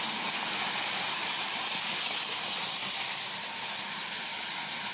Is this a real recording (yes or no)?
yes